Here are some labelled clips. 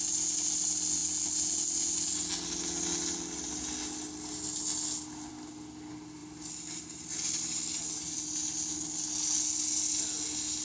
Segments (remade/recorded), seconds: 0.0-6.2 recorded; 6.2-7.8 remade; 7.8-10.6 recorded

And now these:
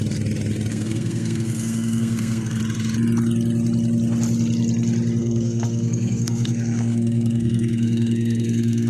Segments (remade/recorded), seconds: 0.0-0.7 recorded; 0.7-2.6 remade; 2.6-5.2 recorded; 5.2-8.9 remade

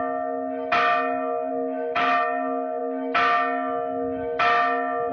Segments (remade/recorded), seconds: 0.0-1.5 recorded; 1.5-2.1 remade; 2.1-5.1 recorded

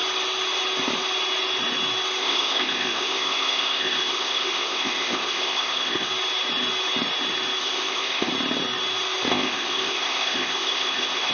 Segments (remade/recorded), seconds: 0.0-2.2 recorded; 2.2-6.1 remade; 6.1-7.6 recorded; 7.6-8.3 remade; 8.3-9.3 recorded; 9.3-11.3 remade

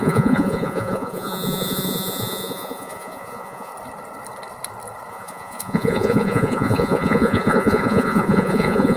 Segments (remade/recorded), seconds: 0.0-3.7 remade; 3.7-5.1 recorded; 5.1-9.0 remade

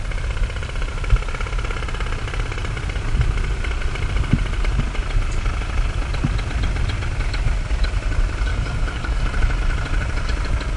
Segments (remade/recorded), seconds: 0.0-8.5 recorded; 8.5-9.2 remade; 9.2-10.8 recorded

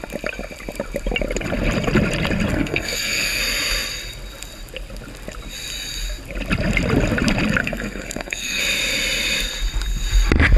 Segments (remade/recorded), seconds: 0.0-2.5 recorded; 2.5-3.4 remade; 3.4-7.6 recorded; 7.6-8.6 remade; 8.6-10.6 recorded

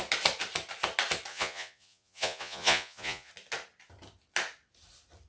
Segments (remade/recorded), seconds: 0.0-1.3 recorded; 1.3-3.3 remade; 3.3-5.3 recorded